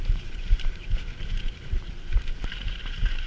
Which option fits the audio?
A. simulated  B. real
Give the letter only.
A